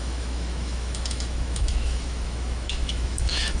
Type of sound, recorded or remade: remade